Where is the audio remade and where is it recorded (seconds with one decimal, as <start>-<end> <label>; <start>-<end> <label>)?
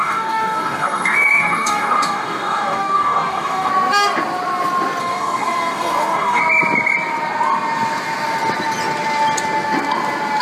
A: 0.0-3.7 remade; 3.7-5.0 recorded; 5.0-6.4 remade; 6.4-10.4 recorded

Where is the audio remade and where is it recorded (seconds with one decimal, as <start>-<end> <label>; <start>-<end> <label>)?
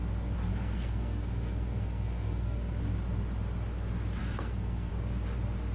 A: 0.0-0.5 recorded; 0.5-2.8 remade; 2.8-4.2 recorded; 4.2-4.9 remade; 4.9-5.7 recorded